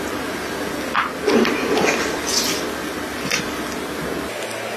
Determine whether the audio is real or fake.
real